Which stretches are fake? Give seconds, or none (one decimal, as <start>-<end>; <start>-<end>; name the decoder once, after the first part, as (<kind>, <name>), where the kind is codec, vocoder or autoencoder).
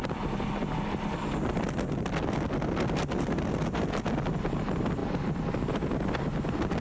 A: none